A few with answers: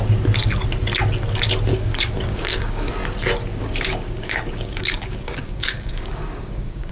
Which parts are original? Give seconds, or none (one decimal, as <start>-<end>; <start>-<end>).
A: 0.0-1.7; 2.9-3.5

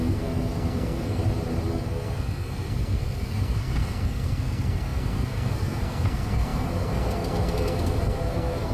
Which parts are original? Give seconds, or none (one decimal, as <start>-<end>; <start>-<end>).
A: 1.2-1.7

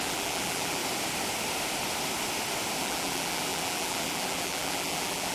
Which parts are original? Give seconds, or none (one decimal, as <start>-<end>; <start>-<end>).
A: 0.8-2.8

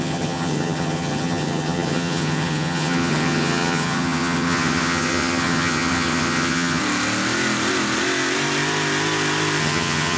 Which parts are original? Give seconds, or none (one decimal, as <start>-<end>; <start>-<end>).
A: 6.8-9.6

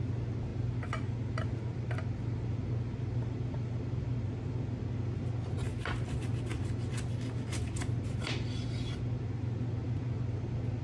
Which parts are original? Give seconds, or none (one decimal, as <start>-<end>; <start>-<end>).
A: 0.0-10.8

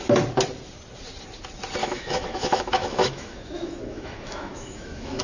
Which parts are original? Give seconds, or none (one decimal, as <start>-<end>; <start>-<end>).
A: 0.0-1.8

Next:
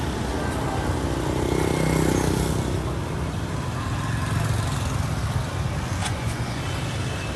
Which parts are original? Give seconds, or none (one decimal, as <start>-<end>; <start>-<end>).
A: 0.0-6.0; 6.6-7.4

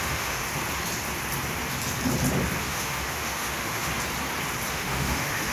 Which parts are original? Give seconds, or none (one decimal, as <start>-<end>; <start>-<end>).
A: 0.4-2.6; 3.9-4.7